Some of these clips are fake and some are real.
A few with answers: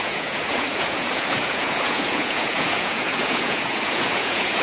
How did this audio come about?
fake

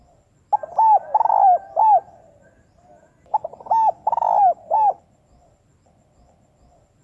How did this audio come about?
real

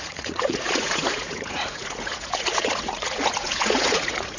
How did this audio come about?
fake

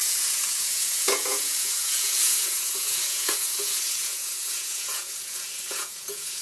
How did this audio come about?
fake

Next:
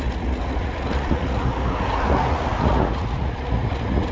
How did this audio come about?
fake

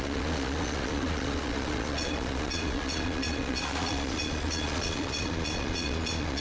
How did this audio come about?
fake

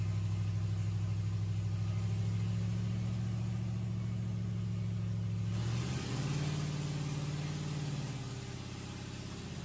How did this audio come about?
real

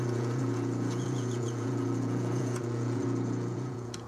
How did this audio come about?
fake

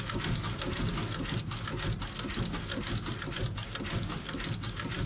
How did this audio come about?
real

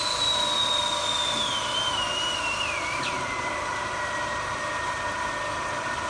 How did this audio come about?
real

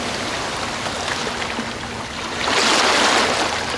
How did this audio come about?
real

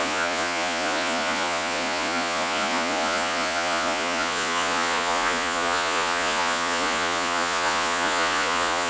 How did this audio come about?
fake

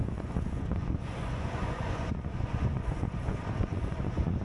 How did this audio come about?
fake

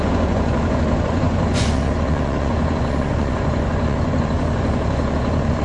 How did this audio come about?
fake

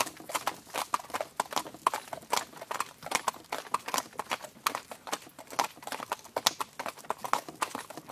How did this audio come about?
real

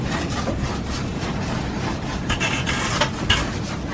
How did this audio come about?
real